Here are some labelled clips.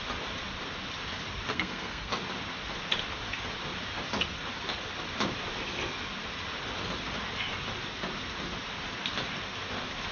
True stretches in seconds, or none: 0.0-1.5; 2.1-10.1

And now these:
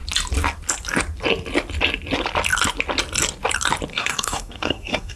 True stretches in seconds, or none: 0.0-3.9

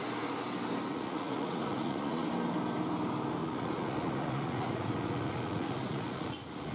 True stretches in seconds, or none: 0.0-0.9; 2.3-3.4

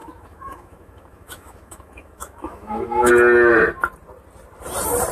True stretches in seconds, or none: 3.1-5.1

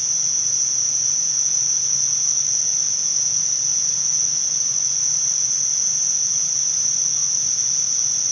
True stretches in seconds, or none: 1.9-3.7; 5.5-8.3

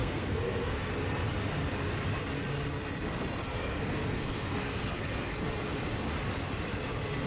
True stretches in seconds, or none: 0.9-3.4; 5.4-7.3